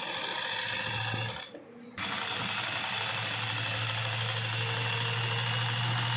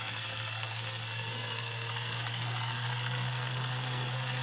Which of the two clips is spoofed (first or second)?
second